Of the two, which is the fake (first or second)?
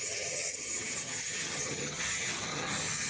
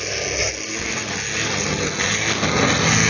first